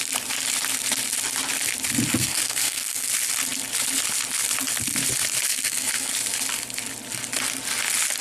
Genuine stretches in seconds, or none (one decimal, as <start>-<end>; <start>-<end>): 0.0-2.2; 3.1-5.5; 6.1-8.2